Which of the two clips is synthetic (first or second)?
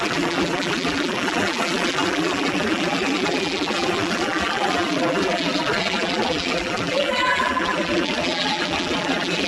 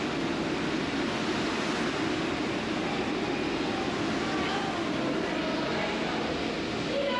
first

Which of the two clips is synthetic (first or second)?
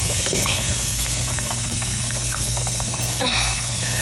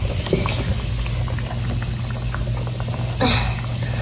first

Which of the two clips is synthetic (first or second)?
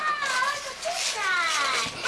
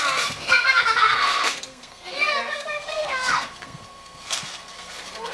second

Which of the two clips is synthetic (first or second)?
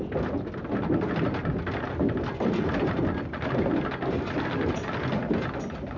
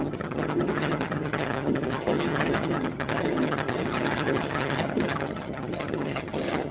second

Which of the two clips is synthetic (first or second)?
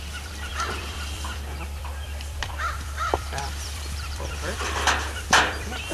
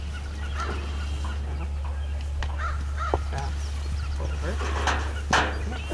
first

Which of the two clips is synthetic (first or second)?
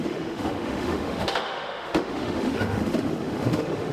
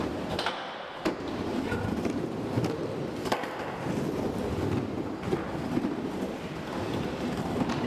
first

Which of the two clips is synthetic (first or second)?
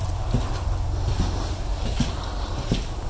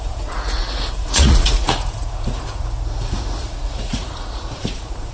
second